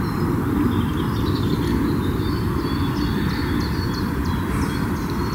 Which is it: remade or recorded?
recorded